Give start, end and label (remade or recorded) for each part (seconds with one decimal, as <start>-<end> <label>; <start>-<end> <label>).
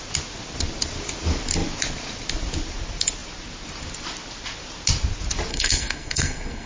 0.0-5.5 recorded; 5.5-6.7 remade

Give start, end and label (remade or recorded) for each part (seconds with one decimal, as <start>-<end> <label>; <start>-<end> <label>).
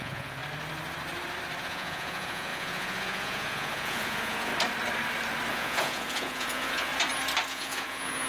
0.0-0.4 remade; 0.4-1.6 recorded; 1.6-4.5 remade; 4.5-5.5 recorded; 5.5-6.9 remade; 6.9-7.5 recorded; 7.5-8.3 remade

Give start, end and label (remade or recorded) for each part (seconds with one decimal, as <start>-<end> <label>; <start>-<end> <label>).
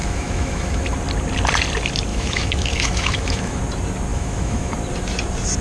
0.0-0.8 remade; 0.8-2.1 recorded; 2.1-3.6 remade; 3.6-4.1 recorded; 4.1-4.7 remade; 4.7-5.6 recorded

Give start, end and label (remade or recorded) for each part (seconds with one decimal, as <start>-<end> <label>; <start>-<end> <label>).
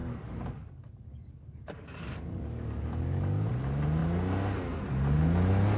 0.0-3.5 remade; 3.5-5.8 recorded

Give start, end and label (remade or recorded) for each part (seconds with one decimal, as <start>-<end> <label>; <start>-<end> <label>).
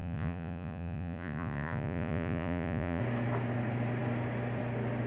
0.0-3.0 remade; 3.0-5.1 recorded